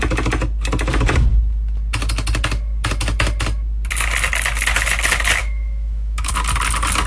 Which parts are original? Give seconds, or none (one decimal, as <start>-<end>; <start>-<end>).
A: 0.0-5.4; 6.3-7.1